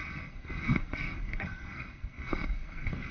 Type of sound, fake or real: fake